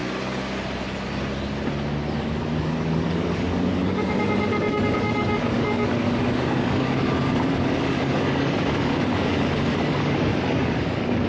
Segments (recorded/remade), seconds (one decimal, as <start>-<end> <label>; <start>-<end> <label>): 0.0-2.6 recorded; 2.6-11.3 remade